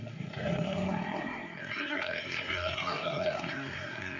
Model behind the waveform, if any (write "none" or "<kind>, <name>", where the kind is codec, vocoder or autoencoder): codec, SNAC